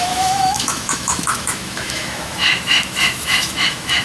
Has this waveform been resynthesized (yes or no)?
yes